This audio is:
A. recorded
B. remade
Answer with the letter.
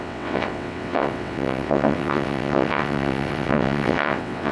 B